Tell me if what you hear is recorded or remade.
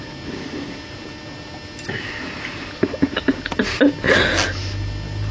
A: recorded